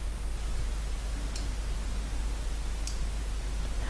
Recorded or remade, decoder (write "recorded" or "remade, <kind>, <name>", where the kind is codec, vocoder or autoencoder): recorded